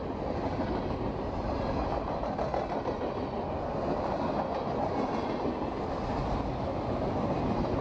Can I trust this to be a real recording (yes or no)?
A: yes